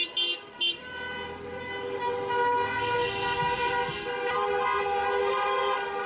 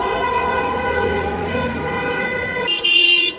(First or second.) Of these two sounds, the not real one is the second